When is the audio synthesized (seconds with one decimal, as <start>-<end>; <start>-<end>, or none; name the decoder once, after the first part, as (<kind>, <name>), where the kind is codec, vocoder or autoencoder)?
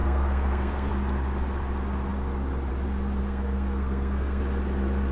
0.0-0.9 (codec, SNAC); 3.2-4.4